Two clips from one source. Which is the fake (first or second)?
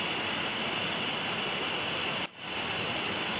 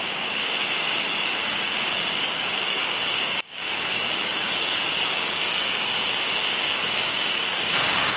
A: second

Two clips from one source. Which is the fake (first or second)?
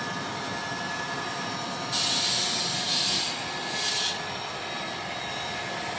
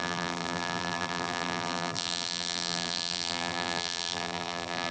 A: second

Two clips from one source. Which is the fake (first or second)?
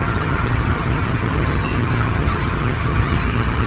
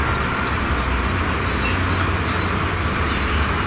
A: first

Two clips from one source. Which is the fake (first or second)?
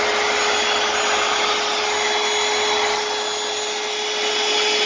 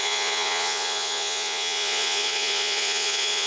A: second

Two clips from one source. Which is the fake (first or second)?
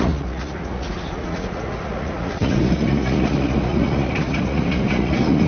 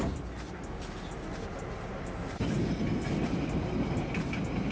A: first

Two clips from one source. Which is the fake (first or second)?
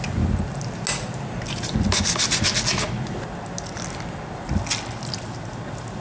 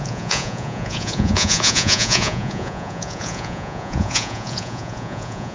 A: second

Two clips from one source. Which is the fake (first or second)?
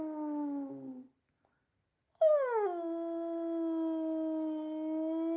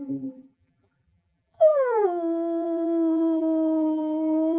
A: second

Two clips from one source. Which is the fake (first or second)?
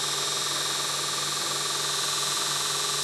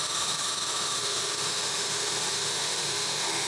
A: second